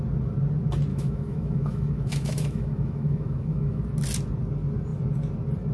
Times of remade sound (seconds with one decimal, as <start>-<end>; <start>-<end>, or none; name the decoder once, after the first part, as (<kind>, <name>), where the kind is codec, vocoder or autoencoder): 0.9-3.8 (autoencoder, DAC-VAE)

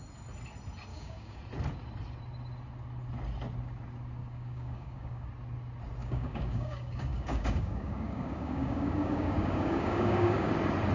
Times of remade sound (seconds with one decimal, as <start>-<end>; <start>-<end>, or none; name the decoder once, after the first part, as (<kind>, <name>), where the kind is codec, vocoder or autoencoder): 0.9-1.4 (codec, DAC); 4.2-5.3; 6.0-10.5

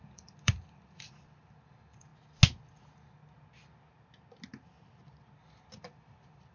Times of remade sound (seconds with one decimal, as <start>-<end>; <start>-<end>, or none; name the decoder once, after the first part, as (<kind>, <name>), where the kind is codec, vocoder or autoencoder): 0.0-2.1 (vocoder, BigVGAN v2); 5.8-6.5

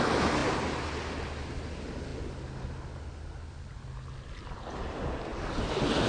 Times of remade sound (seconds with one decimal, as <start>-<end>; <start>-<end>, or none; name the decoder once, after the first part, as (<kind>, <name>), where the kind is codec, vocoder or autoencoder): none

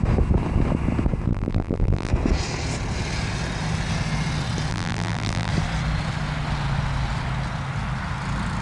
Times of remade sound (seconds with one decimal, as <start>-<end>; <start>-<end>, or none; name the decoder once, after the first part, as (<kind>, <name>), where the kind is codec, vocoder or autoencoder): 1.3-2.1 (vocoder, BigVGAN v2); 4.7-5.5